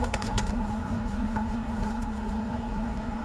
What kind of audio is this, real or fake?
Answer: fake